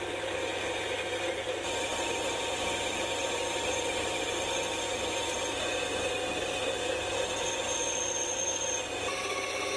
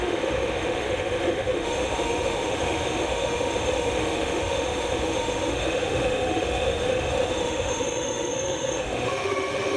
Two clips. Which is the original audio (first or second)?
first